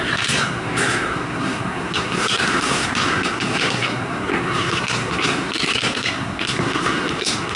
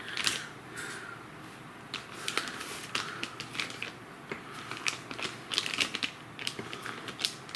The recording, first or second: second